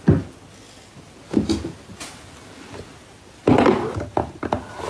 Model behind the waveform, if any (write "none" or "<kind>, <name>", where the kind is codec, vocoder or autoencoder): none